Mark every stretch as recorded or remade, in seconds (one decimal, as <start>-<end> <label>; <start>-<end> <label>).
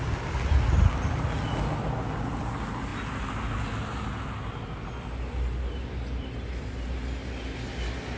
0.0-8.2 recorded